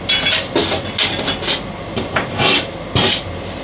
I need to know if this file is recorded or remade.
recorded